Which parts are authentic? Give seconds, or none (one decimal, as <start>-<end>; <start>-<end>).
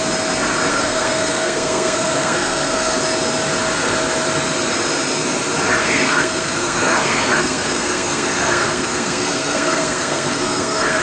0.0-0.7; 3.0-5.8